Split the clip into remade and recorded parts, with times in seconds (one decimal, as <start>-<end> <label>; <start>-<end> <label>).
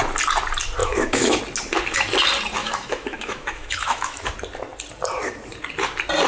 0.0-0.8 recorded; 0.8-1.4 remade; 1.4-2.6 recorded; 2.6-4.3 remade; 4.3-6.3 recorded